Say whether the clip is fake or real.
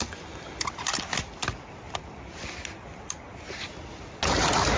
real